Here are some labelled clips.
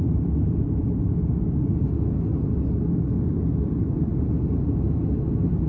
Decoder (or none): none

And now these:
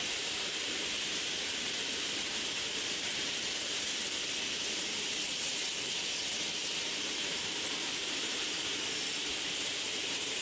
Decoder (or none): vocoder, BigVGAN v2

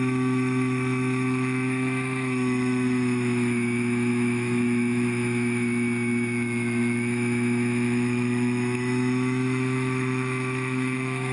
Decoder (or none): autoencoder, DAC-VAE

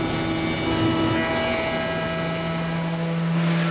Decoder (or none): none